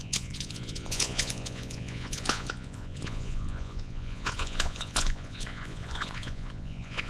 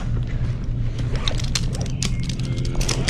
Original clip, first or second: second